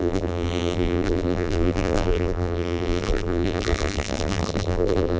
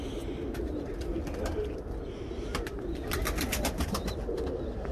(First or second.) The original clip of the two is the second